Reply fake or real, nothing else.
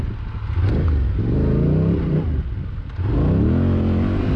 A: real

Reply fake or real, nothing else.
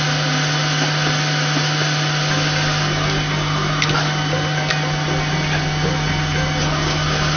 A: real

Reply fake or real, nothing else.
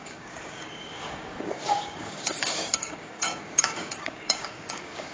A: fake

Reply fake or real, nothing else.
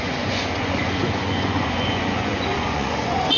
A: fake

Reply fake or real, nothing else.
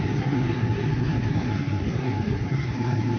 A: fake